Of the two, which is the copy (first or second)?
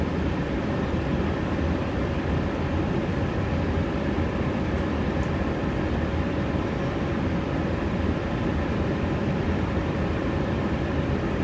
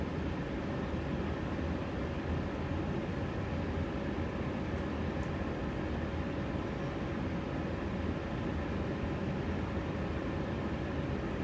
first